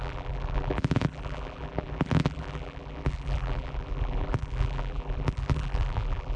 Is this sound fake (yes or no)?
yes